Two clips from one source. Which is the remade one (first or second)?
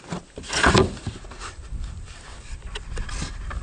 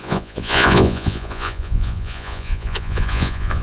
second